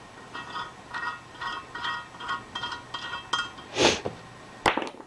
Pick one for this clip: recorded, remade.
recorded